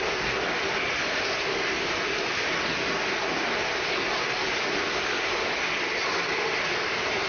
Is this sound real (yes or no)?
yes